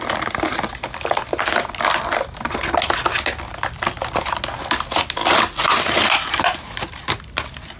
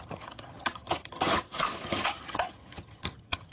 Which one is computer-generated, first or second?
second